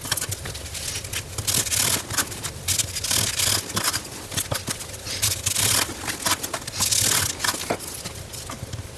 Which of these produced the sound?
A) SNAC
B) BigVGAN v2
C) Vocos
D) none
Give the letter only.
D